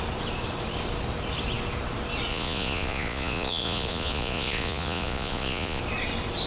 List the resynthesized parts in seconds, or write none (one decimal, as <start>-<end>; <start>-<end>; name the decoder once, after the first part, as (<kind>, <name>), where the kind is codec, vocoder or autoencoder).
2.3-5.8 (vocoder, Vocos)